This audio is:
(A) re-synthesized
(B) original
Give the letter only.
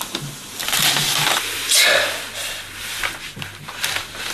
B